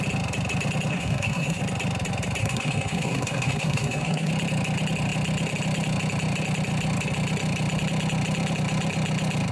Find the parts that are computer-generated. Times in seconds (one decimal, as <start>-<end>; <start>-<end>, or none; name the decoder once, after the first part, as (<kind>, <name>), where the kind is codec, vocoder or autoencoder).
0.9-1.6 (codec, SNAC); 2.4-4.3